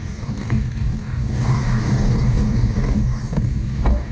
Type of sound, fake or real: fake